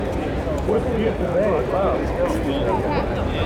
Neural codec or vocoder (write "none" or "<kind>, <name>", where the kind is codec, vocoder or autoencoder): none